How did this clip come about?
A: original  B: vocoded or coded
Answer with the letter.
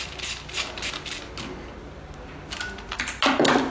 A